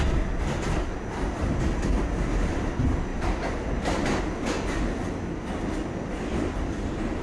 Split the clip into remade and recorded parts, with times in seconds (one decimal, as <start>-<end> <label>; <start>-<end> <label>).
0.0-7.2 recorded